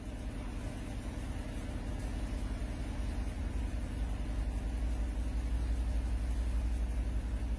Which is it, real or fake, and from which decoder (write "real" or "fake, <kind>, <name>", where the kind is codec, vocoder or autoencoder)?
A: real